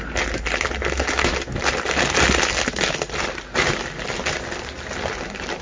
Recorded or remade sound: recorded